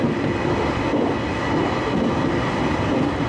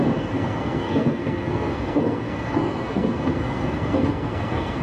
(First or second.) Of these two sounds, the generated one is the second